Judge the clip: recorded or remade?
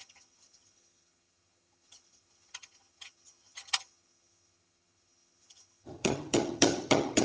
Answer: remade